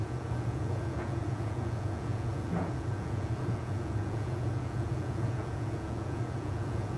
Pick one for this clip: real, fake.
fake